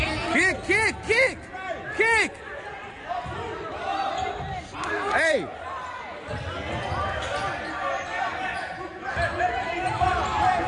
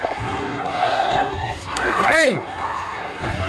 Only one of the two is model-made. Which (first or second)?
second